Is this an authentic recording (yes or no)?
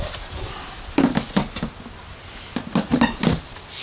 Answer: yes